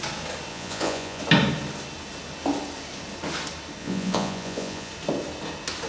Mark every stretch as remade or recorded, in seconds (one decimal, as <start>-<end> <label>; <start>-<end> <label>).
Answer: 0.0-0.5 recorded; 0.5-1.2 remade; 1.2-3.8 recorded; 3.8-4.9 remade; 4.9-5.9 recorded